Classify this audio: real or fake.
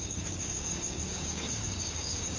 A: fake